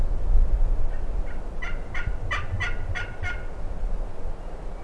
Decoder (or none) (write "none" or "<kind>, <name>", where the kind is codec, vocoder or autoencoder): none